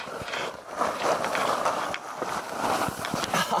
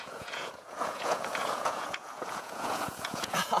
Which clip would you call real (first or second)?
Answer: first